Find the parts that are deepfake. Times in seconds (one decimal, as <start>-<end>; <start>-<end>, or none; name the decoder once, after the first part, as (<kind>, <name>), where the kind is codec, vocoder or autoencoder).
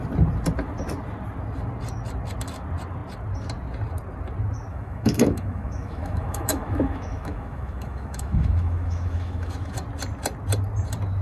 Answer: 4.7-9.7 (autoencoder, DAC-VAE)